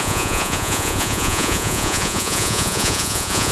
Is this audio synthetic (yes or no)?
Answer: yes